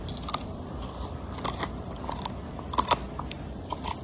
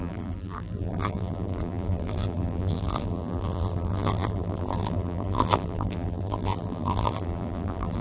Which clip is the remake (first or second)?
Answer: second